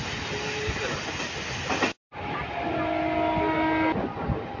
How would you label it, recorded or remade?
recorded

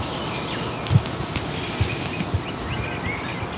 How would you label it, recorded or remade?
recorded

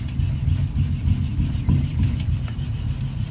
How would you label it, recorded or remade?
recorded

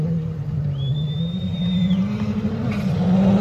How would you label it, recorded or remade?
recorded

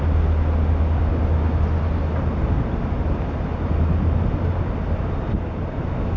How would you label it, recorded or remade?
recorded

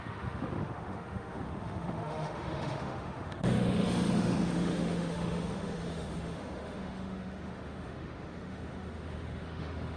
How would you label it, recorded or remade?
remade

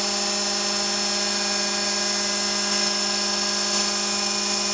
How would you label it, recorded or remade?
recorded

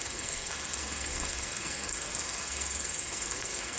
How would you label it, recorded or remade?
remade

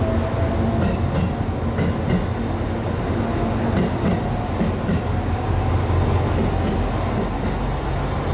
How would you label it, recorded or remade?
recorded